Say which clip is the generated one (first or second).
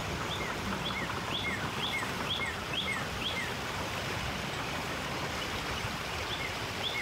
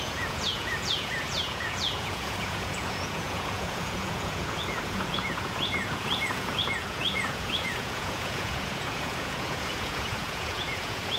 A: second